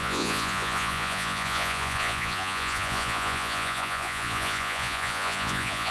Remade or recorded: remade